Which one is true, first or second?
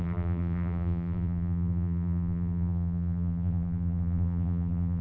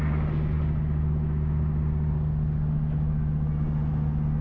second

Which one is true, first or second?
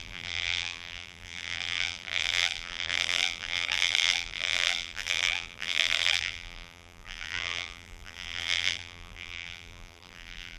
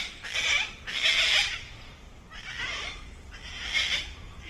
second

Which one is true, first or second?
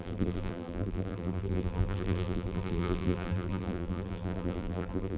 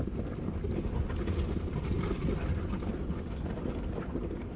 second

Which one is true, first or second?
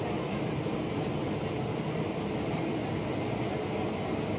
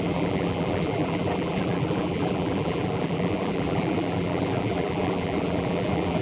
first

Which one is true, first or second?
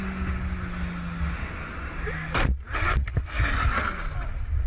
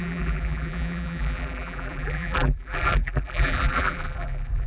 first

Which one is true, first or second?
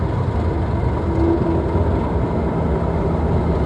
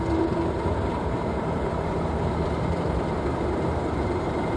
first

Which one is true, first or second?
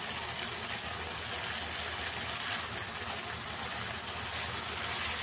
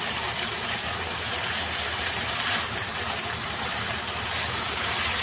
first